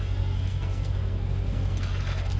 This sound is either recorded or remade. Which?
remade